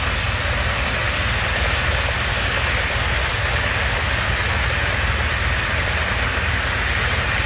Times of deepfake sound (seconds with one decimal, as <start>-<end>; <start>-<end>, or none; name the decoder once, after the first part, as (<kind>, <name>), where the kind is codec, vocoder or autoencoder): none